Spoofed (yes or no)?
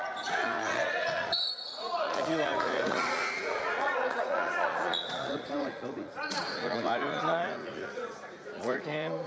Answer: yes